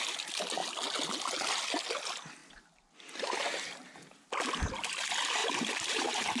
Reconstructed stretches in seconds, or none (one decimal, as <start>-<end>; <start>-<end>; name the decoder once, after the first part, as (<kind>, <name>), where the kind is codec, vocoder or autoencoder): 5.4-6.4 (vocoder, BigVGAN v2)